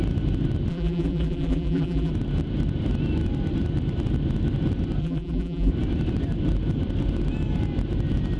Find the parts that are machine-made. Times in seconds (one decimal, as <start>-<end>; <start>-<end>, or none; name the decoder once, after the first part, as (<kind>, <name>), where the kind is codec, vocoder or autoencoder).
0.7-2.1 (vocoder, BigVGAN v2); 5.0-5.7